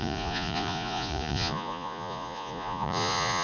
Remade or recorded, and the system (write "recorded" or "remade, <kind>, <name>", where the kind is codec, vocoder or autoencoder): remade, vocoder, Vocos